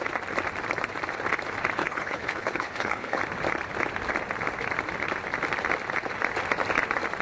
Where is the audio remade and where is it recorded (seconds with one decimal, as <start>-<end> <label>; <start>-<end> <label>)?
0.0-1.8 recorded; 1.8-3.2 remade; 3.2-7.2 recorded